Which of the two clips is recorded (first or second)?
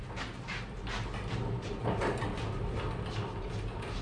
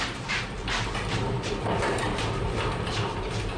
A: first